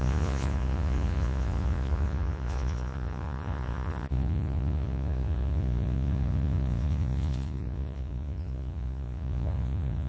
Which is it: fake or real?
fake